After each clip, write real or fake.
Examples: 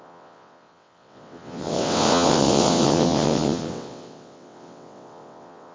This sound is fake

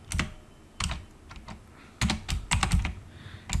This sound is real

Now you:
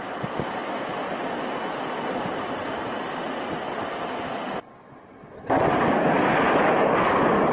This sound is real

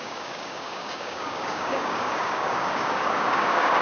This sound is fake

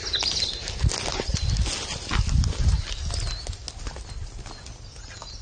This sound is real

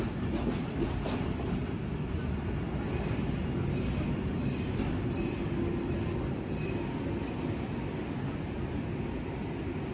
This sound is real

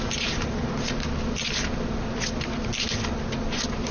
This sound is real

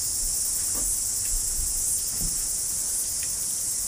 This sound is fake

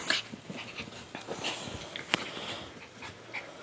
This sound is real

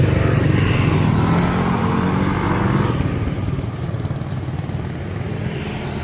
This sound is real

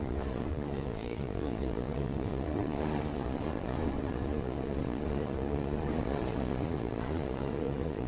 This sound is fake